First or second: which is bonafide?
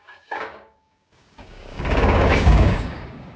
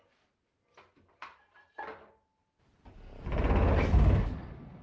second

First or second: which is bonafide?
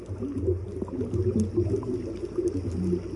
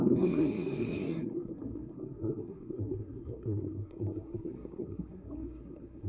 first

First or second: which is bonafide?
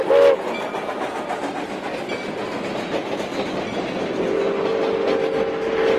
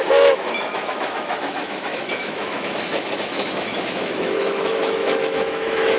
first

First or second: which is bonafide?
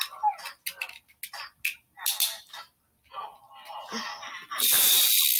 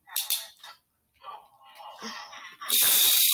first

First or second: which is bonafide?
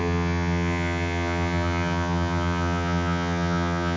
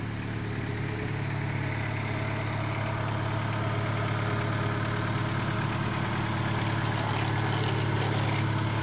second